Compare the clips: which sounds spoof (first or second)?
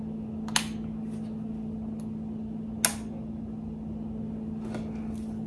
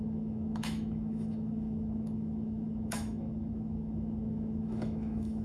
second